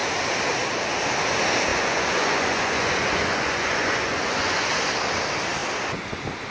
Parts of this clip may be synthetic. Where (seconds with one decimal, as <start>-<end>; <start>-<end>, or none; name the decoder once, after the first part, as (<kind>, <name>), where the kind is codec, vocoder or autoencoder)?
1.7-4.7 (vocoder, Vocos)